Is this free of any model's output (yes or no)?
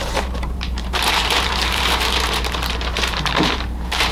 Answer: no